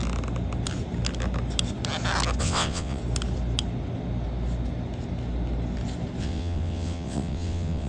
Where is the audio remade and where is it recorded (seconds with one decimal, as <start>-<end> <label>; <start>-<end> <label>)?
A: 0.0-2.4 recorded; 2.4-3.0 remade; 3.0-6.2 recorded; 6.2-7.9 remade